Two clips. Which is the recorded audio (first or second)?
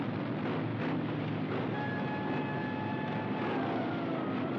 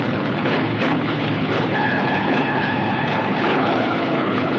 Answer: first